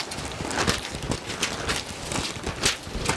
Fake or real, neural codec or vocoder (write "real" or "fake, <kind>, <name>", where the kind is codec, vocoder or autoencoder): real